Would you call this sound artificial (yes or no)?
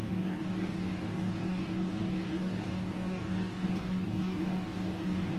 yes